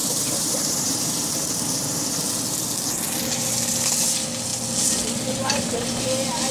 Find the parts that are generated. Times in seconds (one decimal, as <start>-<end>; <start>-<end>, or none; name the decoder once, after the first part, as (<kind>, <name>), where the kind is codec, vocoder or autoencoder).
0.0-2.2 (vocoder, BigVGAN v2)